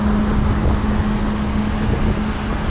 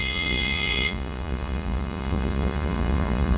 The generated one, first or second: second